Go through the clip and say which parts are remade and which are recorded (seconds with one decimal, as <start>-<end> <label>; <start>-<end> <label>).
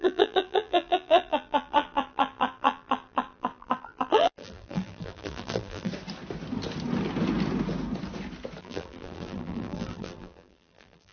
0.0-5.9 remade; 5.9-8.6 recorded; 8.6-11.1 remade